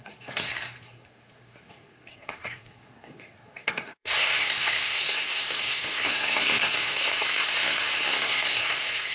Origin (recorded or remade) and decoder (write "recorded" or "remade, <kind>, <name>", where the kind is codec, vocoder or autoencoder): remade, codec, SNAC